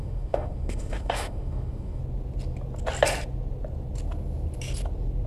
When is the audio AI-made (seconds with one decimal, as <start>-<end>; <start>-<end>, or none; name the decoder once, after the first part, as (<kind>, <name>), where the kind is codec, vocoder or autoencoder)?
0.0-2.0 (autoencoder, DAC-VAE)